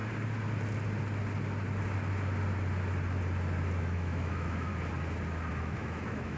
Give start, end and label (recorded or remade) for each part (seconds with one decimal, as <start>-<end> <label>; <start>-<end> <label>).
0.0-3.8 recorded; 3.8-4.7 remade; 4.7-5.5 recorded; 5.5-6.4 remade